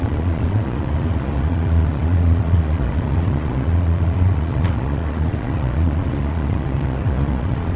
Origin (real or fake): fake